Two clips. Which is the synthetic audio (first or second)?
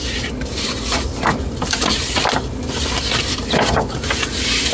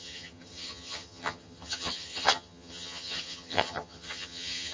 second